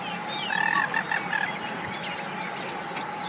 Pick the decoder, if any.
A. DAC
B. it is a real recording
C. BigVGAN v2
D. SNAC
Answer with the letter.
B